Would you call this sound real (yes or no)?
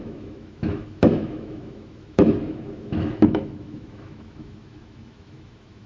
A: no